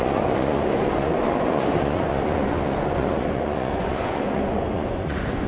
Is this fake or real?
fake